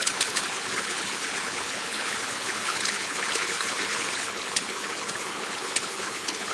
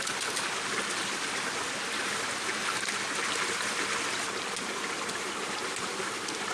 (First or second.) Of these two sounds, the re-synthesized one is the first